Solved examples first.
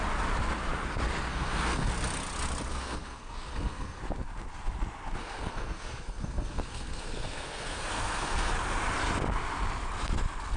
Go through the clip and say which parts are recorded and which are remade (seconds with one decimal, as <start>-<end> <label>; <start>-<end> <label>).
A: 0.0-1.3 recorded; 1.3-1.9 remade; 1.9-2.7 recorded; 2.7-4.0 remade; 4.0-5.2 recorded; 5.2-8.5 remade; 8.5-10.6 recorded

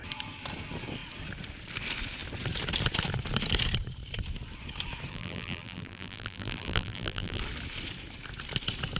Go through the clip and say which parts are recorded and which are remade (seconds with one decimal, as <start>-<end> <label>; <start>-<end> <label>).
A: 0.0-5.1 recorded; 5.1-7.4 remade; 7.4-9.0 recorded

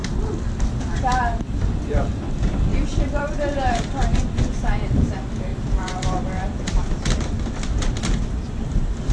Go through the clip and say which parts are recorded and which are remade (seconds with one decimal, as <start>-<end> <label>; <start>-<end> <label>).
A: 0.0-2.1 remade; 2.1-2.7 recorded; 2.7-4.2 remade; 4.2-5.5 recorded; 5.5-8.6 remade; 8.6-9.1 recorded

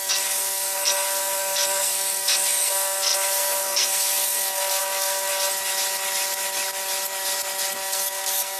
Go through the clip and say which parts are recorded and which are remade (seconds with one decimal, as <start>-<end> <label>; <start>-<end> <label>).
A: 0.0-5.3 remade; 5.3-7.7 recorded; 7.7-8.6 remade

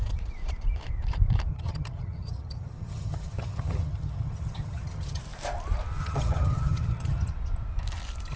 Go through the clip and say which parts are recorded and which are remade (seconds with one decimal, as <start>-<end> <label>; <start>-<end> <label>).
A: 0.0-1.5 recorded; 1.5-5.2 remade; 5.2-6.0 recorded; 6.0-7.3 remade; 7.3-8.4 recorded